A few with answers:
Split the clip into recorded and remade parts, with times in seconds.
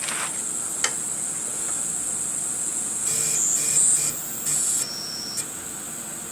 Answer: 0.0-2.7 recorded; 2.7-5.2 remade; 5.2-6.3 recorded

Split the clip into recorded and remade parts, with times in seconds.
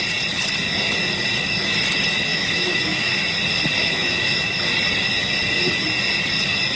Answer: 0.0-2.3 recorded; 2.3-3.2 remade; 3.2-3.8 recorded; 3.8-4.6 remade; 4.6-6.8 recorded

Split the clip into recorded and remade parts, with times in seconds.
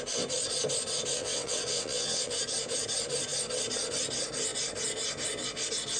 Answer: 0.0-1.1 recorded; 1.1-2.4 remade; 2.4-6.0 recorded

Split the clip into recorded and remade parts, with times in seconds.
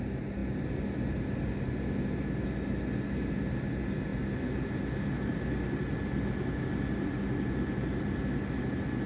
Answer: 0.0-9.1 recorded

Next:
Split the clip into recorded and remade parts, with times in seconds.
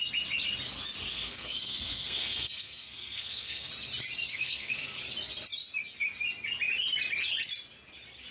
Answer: 0.0-1.1 recorded; 1.1-3.7 remade; 3.7-4.3 recorded; 4.3-5.0 remade; 5.0-8.3 recorded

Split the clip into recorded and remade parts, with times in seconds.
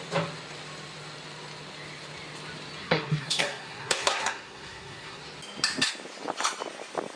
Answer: 0.0-2.8 recorded; 2.8-5.2 remade; 5.2-7.2 recorded